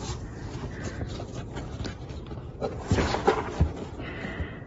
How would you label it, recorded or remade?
recorded